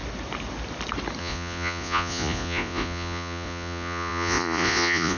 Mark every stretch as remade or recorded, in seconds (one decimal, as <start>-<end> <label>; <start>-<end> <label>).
0.0-1.2 recorded; 1.2-5.2 remade